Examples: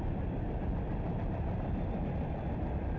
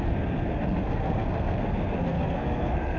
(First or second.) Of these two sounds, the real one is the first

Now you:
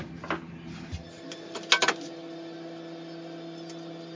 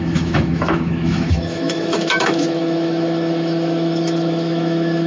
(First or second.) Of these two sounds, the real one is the first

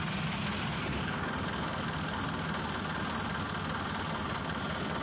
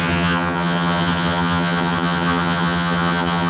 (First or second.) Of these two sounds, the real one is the first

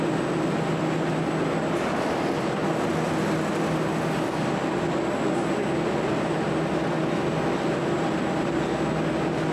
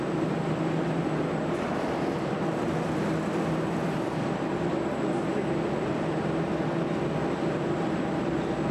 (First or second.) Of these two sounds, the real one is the first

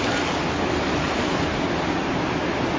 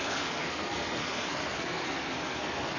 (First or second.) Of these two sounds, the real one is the first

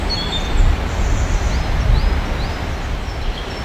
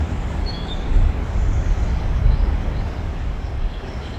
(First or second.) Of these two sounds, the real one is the first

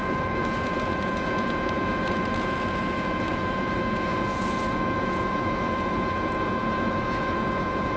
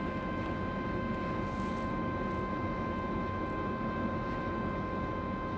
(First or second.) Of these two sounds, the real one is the second